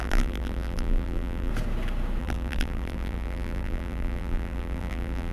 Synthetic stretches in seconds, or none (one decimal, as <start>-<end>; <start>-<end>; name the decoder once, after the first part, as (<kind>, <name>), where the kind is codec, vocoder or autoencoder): 0.0-1.5 (vocoder, BigVGAN v2); 2.2-5.3